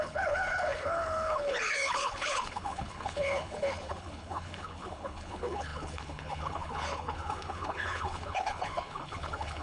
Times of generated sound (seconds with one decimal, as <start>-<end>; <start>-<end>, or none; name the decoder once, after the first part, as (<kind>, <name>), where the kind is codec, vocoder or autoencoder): 0.0-9.6 (codec, HILCodec)